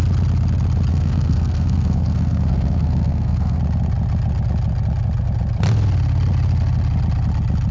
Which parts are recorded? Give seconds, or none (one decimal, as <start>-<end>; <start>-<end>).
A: 0.0-0.9; 3.6-7.7